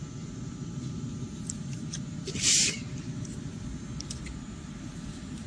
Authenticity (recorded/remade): remade